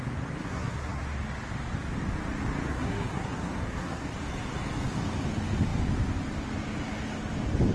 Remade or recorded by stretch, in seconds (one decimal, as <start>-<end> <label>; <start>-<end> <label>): 0.0-0.4 recorded; 0.4-1.0 remade; 1.0-2.7 recorded; 2.7-4.0 remade; 4.0-7.7 recorded